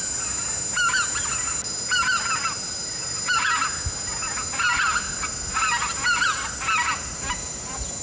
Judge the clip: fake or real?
real